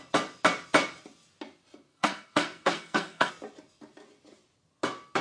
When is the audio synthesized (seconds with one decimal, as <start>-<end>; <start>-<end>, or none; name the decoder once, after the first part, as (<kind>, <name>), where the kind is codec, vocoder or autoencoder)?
1.9-3.3 (codec, SNAC)